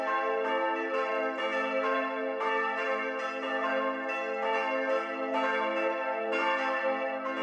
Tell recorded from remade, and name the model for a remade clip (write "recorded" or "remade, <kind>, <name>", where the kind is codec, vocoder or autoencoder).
recorded